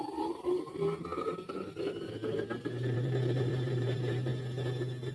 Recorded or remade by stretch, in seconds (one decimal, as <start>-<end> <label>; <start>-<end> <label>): 0.0-4.3 remade; 4.3-5.1 recorded